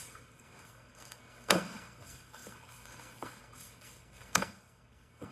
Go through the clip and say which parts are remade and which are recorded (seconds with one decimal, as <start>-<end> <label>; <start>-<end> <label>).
0.0-5.3 remade